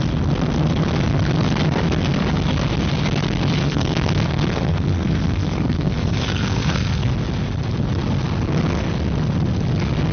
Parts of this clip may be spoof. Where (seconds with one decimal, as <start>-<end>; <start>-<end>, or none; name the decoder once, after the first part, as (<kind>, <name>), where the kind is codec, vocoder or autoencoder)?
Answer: 3.6-7.1 (codec, SNAC)